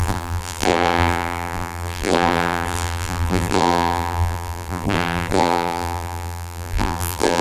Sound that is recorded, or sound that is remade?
remade